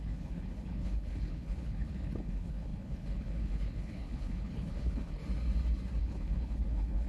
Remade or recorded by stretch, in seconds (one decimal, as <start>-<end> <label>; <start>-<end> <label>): 0.0-5.2 remade; 5.2-6.0 recorded; 6.0-7.1 remade